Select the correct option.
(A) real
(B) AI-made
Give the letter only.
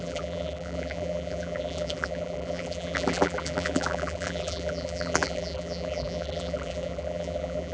B